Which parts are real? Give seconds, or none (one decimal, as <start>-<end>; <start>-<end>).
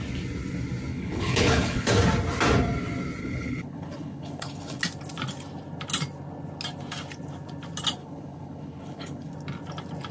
0.0-0.9; 1.9-3.2; 4.8-8.0; 9.3-10.1